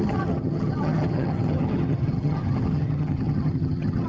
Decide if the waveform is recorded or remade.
remade